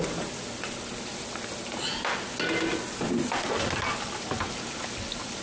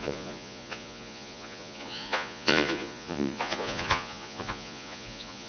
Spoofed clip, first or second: second